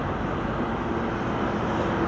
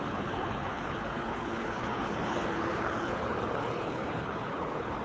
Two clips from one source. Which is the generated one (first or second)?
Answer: second